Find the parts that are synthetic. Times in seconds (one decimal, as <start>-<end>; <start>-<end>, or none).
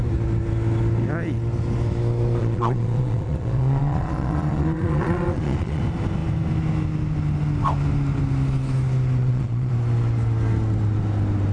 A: 2.4-5.8; 9.2-9.7